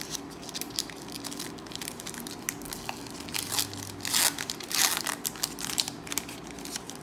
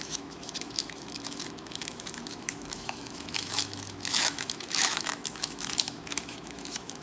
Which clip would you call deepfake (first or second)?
second